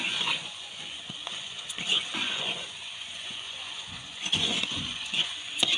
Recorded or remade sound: remade